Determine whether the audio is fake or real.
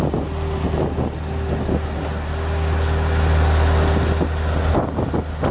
real